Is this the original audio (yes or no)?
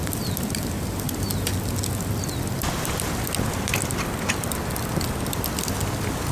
yes